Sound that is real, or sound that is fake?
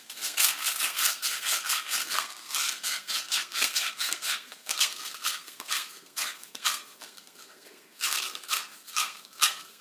fake